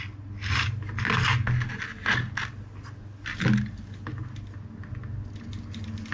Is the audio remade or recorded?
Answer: recorded